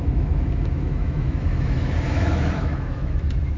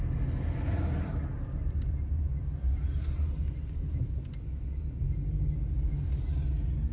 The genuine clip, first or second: second